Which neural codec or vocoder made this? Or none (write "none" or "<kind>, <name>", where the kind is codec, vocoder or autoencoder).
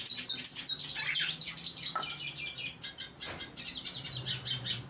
none